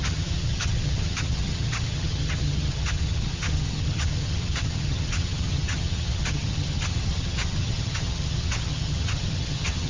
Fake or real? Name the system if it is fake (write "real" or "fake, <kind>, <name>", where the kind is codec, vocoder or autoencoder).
fake, vocoder, HiFi-GAN